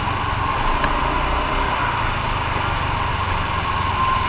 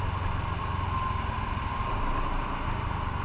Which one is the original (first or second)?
second